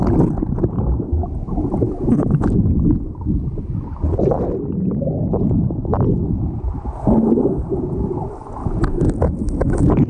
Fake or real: real